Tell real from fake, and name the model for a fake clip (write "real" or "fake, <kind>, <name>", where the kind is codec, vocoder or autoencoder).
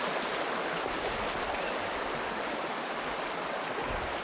real